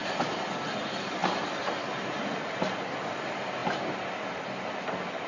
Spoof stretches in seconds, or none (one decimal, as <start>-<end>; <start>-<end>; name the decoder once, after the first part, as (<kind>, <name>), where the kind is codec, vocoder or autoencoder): none